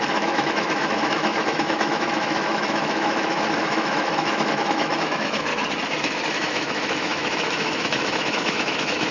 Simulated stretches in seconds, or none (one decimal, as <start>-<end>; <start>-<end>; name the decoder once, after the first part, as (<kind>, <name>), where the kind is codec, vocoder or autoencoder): 0.0-5.5 (autoencoder, DAC-VAE); 6.3-9.1